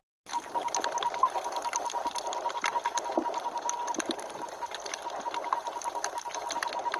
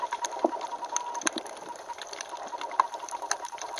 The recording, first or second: first